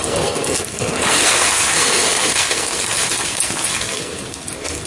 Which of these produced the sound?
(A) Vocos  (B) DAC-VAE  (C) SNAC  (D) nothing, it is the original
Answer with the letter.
C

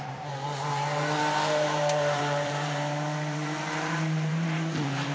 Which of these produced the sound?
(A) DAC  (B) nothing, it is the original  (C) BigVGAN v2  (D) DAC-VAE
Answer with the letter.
C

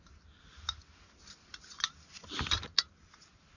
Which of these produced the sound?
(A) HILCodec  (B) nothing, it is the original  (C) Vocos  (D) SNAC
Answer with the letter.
B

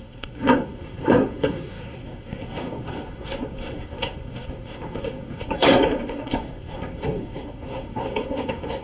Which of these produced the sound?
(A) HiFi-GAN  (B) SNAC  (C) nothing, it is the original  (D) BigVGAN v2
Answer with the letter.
B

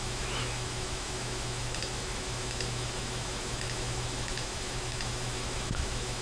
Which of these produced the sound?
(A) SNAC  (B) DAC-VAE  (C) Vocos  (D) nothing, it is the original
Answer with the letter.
B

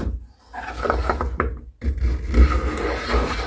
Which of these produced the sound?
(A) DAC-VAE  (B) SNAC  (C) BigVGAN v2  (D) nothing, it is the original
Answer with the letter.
D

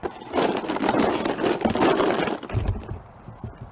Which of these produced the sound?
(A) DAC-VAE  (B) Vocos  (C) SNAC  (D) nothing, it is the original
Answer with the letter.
D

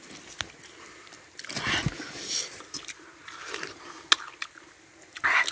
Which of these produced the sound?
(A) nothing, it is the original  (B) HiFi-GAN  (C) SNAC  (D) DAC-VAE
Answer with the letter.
A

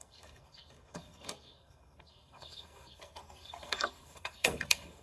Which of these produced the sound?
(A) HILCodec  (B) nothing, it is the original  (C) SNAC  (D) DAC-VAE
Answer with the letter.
C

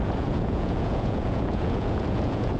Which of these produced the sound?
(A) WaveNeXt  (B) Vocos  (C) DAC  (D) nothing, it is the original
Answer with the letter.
B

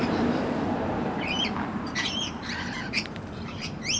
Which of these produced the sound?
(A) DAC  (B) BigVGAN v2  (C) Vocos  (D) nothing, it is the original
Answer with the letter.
B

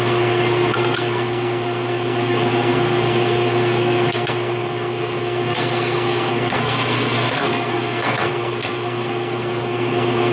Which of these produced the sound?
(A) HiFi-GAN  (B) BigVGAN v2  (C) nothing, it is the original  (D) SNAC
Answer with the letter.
D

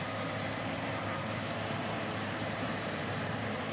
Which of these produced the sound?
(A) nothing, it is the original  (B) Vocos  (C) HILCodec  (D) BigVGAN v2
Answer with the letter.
D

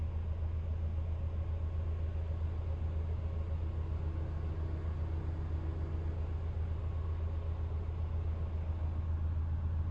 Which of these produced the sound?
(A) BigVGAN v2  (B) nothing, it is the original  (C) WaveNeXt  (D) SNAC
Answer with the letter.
B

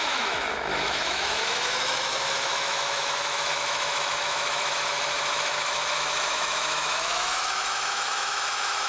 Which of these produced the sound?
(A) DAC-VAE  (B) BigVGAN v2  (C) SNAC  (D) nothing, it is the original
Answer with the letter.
A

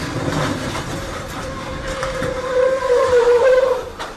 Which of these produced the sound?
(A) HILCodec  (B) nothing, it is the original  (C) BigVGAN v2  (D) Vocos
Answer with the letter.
C